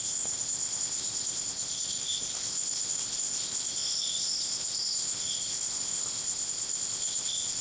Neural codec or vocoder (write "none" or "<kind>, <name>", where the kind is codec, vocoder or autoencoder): codec, ZipCodec